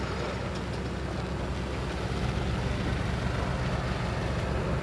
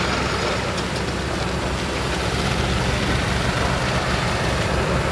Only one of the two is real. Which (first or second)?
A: first